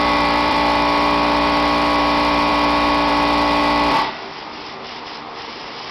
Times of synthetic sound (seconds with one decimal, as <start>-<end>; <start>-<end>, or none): 0.0-2.5; 3.1-3.6; 4.2-5.9